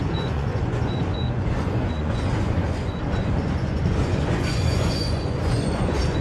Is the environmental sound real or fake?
fake